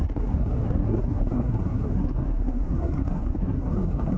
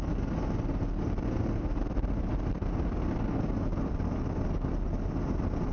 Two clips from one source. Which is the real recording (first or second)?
second